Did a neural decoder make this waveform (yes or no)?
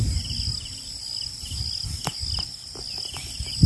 no